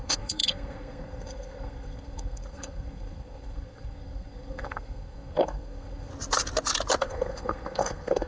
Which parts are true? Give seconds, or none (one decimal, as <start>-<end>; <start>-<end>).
6.1-7.0